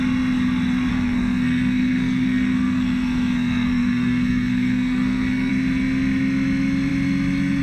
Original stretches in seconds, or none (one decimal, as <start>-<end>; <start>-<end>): 0.0-0.9; 5.5-7.6